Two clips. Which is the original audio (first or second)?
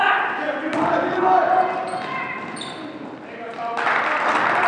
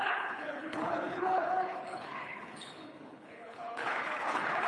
first